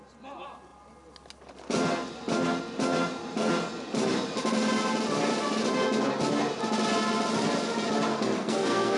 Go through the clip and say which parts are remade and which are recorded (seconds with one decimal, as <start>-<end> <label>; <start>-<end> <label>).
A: 0.0-8.1 recorded; 8.1-9.0 remade